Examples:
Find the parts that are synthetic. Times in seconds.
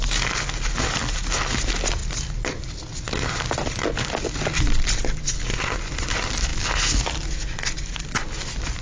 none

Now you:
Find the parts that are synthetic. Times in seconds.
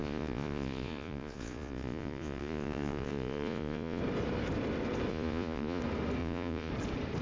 0.0-4.0; 5.1-5.8; 6.2-6.7